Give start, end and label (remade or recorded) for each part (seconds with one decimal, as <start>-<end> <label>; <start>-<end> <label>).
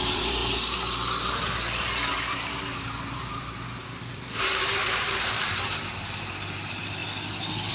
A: 0.0-0.4 remade; 0.4-2.0 recorded; 2.0-7.0 remade; 7.0-7.7 recorded